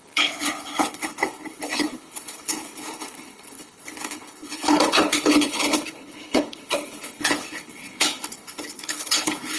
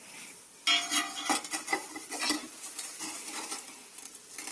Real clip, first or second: second